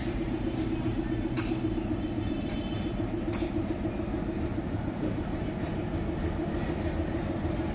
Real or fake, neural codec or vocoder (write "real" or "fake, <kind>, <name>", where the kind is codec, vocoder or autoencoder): real